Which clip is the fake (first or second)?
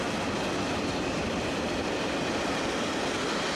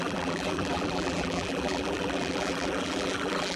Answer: second